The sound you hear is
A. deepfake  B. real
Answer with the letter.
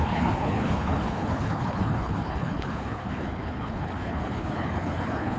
A